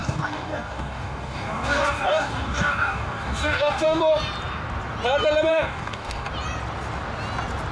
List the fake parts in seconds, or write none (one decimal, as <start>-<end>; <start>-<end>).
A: 0.0-4.0; 5.5-6.3